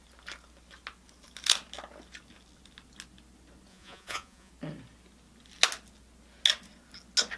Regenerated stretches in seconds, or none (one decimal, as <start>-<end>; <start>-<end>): 3.7-4.5